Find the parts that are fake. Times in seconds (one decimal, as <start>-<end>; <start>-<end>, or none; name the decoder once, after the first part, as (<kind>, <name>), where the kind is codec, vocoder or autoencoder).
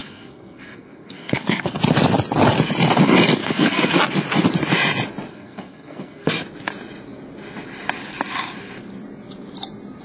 0.0-1.8 (codec, SNAC); 3.4-4.0; 5.3-6.3